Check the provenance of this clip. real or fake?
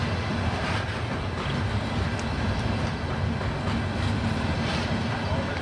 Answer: real